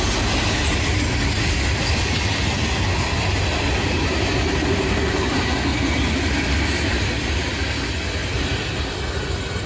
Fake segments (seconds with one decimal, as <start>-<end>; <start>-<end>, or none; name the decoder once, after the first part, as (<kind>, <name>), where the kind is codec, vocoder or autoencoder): none